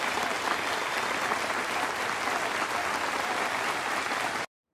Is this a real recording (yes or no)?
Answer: yes